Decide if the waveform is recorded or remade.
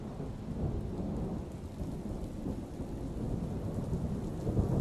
recorded